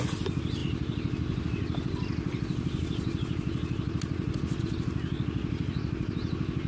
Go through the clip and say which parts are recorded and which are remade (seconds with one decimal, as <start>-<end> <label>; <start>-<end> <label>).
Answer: 0.0-6.7 recorded